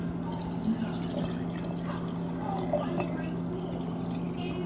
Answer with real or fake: real